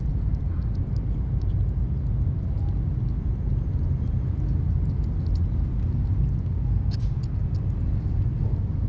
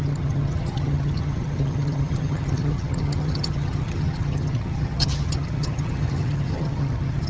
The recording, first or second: first